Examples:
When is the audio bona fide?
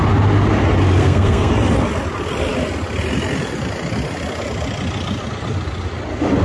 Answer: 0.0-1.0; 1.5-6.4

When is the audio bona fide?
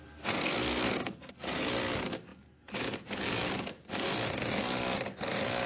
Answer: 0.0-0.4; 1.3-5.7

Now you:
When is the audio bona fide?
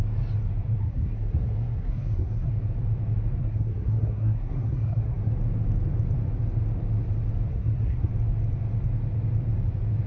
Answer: 0.0-0.8; 2.5-3.4; 5.3-7.5; 8.1-10.1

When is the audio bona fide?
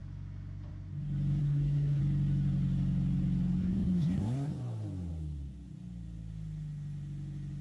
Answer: 0.0-1.4; 2.0-3.6; 4.5-7.6